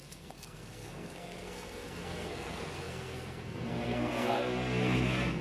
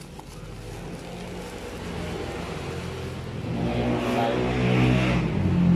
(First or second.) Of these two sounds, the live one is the second